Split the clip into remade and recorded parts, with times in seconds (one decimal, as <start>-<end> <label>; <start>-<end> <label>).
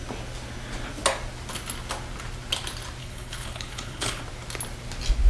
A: 0.0-3.0 recorded; 3.0-4.2 remade; 4.2-5.3 recorded